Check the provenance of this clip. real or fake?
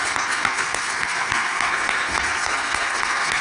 fake